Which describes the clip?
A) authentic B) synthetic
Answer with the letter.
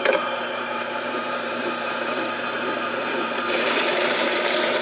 B